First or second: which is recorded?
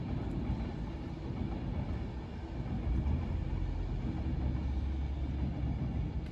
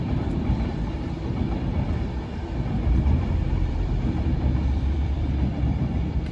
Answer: first